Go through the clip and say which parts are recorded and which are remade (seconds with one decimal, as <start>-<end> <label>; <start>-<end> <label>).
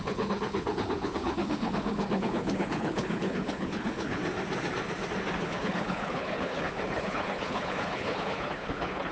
0.0-4.2 remade; 4.2-5.4 recorded; 5.4-9.1 remade